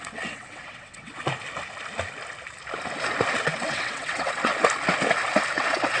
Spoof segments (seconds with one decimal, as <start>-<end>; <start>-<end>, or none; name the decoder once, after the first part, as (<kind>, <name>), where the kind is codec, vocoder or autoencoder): 0.0-1.3 (vocoder, WaveNeXt); 3.4-4.5; 5.5-6.0